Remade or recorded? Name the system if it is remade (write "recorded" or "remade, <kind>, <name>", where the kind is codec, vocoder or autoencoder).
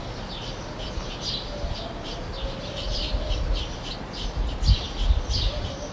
recorded